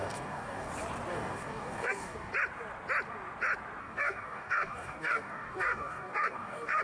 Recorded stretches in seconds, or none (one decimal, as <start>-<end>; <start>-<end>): 0.7-1.1; 2.3-3.8